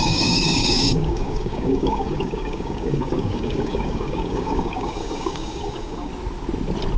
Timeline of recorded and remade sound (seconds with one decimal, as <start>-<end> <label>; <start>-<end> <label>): 0.0-6.1 remade; 6.1-7.0 recorded